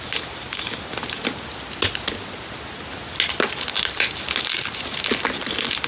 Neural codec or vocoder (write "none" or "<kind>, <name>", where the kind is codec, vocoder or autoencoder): none